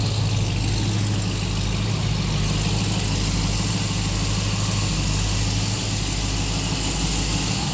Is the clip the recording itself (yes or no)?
yes